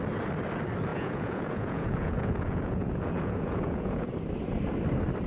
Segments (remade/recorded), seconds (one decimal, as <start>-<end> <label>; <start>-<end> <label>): 0.0-0.9 recorded; 0.9-4.1 remade; 4.1-5.3 recorded